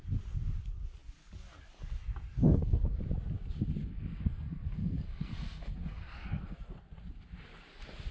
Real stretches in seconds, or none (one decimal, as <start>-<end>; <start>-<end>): 0.0-2.4; 3.0-3.8; 6.8-8.1